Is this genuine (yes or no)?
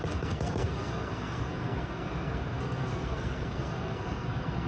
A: no